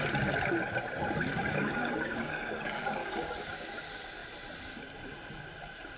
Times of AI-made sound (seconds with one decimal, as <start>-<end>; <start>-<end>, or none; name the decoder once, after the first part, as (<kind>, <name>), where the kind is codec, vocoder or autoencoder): 1.3-2.6 (codec, DAC); 3.0-3.5